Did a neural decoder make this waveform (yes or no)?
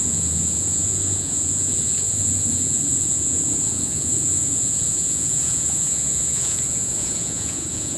yes